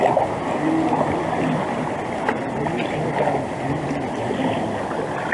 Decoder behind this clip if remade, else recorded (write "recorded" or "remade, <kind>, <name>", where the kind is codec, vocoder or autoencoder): recorded